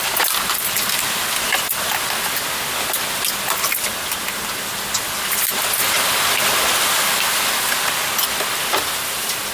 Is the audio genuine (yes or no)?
yes